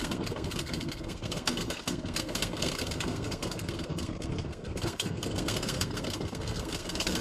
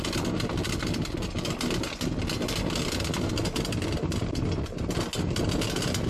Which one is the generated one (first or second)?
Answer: first